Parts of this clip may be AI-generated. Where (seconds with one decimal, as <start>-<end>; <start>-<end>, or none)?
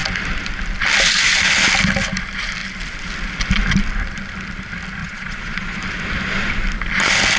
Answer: 5.0-5.8